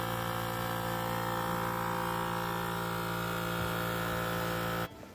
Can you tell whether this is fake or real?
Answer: real